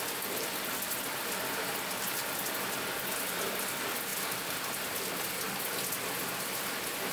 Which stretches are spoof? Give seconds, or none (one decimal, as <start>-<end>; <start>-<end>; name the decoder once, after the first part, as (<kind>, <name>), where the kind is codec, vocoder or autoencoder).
none